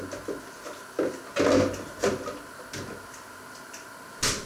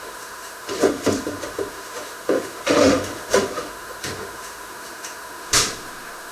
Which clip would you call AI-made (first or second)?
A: second